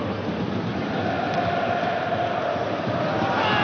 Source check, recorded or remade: recorded